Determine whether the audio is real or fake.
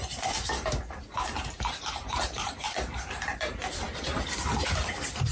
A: fake